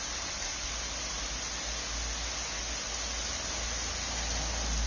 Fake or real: real